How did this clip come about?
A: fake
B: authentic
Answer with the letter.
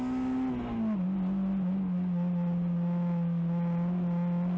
B